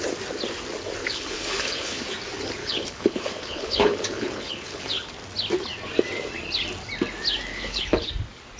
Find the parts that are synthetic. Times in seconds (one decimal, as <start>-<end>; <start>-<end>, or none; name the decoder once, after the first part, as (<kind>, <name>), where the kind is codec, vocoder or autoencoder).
1.0-2.0 (codec, HILCodec); 2.6-5.1; 7.5-8.1